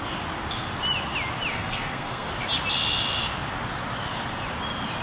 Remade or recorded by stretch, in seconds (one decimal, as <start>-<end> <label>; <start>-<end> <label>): 0.0-1.5 recorded; 1.5-2.3 remade; 2.3-5.0 recorded